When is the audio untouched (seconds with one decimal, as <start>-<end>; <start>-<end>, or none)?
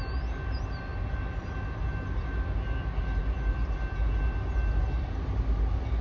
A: 0.0-6.0